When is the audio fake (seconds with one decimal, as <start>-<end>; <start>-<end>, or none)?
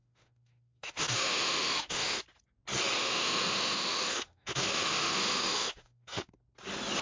0.0-2.2; 3.0-6.3